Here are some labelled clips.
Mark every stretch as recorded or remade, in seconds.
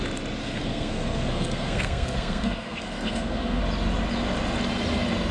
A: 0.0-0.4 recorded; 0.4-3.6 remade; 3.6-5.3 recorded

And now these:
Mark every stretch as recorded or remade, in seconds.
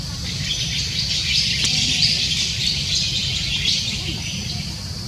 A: 0.0-5.1 recorded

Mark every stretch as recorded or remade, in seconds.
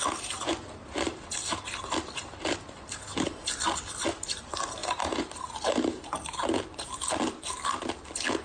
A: 0.0-8.4 recorded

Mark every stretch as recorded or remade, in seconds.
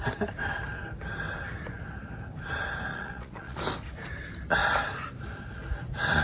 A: 0.0-2.9 recorded; 2.9-3.6 remade; 3.6-6.2 recorded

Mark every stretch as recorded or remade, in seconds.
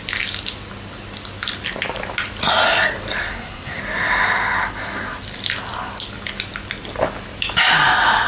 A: 0.0-3.2 recorded; 3.2-3.8 remade; 3.8-8.3 recorded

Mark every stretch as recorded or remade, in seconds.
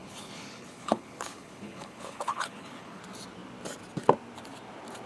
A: 0.0-3.0 remade; 3.0-5.1 recorded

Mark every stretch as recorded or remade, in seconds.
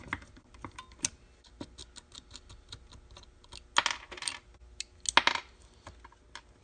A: 0.0-6.6 recorded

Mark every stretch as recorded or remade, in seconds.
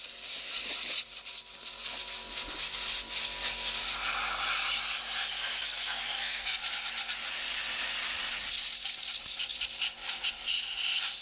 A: 0.0-5.2 recorded; 5.2-6.6 remade; 6.6-11.2 recorded